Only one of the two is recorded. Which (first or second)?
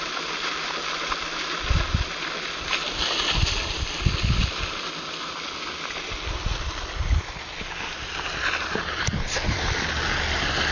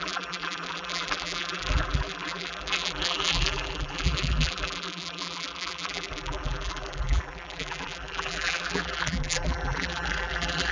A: first